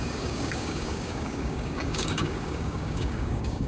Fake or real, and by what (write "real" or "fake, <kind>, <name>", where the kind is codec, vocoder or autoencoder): fake, codec, DAC